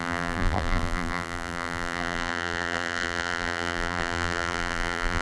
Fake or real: fake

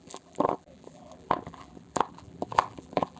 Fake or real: fake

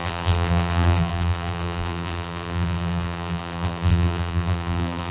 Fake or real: fake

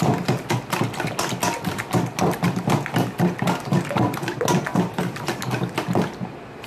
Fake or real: real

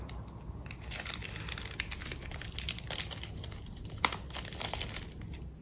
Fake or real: real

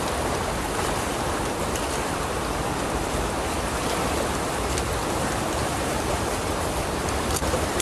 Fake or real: fake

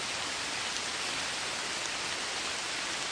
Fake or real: real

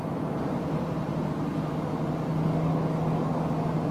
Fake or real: real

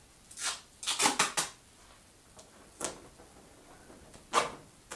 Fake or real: real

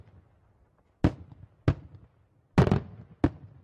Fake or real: real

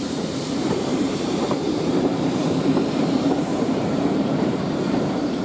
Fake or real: fake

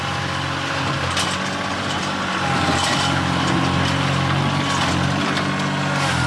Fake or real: real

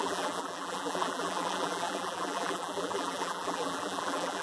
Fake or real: fake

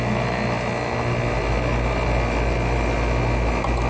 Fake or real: real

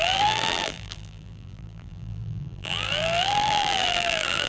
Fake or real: fake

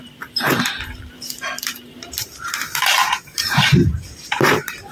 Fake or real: fake